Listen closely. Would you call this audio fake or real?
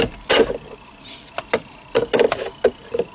real